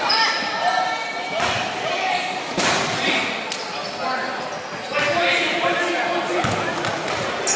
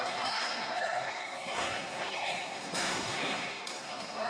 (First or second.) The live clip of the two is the first